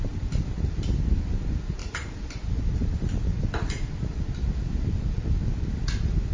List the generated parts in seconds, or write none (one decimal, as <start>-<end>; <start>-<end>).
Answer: none